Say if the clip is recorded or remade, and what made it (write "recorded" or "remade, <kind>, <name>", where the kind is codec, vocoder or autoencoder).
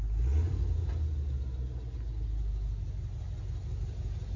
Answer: recorded